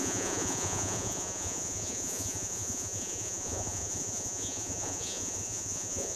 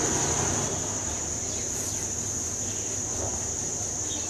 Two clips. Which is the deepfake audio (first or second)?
first